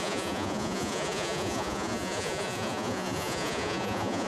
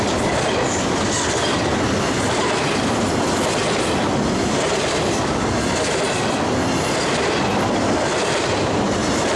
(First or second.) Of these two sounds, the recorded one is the second